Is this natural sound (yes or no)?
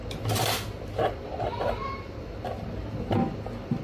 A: yes